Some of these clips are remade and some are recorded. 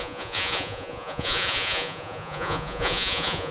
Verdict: remade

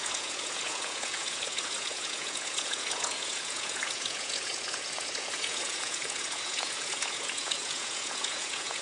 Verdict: remade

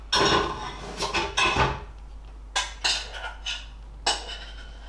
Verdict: recorded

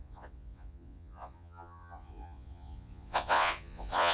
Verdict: remade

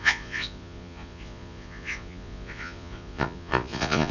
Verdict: remade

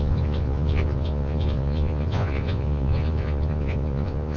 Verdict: remade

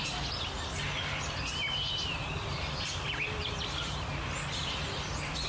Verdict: recorded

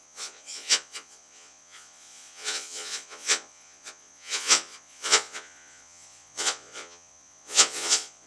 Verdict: remade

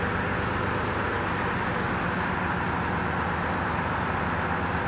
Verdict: recorded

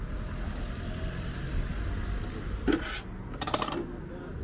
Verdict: recorded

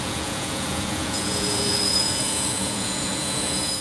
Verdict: remade